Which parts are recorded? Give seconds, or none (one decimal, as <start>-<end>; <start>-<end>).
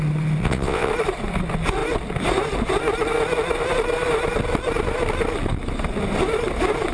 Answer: 0.0-0.4; 0.9-6.9